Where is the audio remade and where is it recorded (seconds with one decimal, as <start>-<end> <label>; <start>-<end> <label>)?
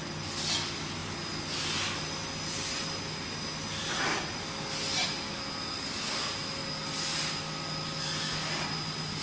0.0-9.2 recorded